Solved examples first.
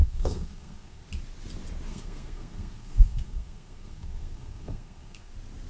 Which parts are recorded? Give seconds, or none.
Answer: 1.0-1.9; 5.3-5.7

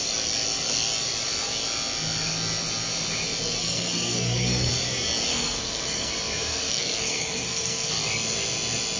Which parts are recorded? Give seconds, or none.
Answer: 0.0-3.6; 4.7-5.3; 6.1-6.5; 7.9-9.0

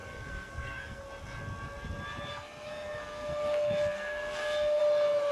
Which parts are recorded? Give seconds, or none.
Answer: 1.0-2.3; 4.8-5.3

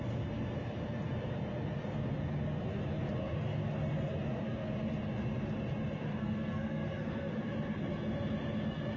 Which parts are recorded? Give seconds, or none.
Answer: 0.0-6.1; 7.3-9.0

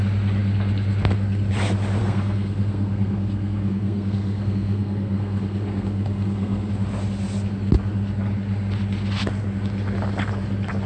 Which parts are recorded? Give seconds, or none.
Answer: 0.0-2.0; 6.7-10.9